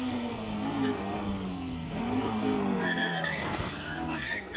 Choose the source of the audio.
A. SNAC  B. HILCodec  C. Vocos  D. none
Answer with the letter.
A